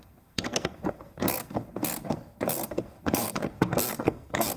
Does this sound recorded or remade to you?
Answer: remade